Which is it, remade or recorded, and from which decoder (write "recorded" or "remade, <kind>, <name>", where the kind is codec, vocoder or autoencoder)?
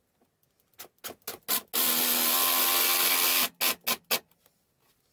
recorded